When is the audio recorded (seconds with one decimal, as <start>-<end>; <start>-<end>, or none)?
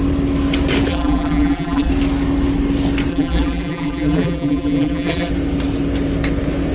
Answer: 0.0-0.9; 1.9-3.1; 5.3-6.7